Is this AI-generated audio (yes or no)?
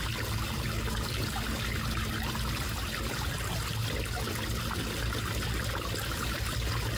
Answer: no